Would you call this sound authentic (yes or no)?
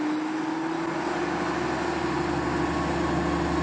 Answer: yes